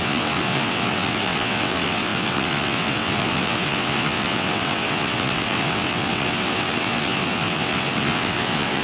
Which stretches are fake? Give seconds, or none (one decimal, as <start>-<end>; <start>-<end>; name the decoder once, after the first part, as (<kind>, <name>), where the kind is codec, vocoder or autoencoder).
0.0-8.8 (vocoder, WaveNeXt)